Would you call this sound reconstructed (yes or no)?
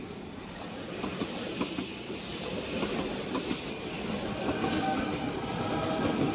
no